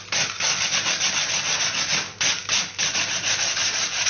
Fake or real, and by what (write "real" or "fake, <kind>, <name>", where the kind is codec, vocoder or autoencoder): real